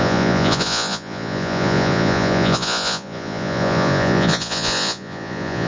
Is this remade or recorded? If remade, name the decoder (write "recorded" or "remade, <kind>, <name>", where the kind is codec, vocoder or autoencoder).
remade, vocoder, Vocos